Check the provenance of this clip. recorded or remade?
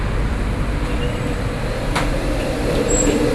remade